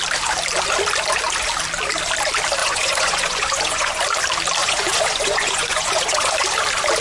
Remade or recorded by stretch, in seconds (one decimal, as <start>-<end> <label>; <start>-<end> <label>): 0.0-2.6 recorded; 2.6-4.0 remade; 4.0-4.6 recorded; 4.6-6.3 remade; 6.3-7.0 recorded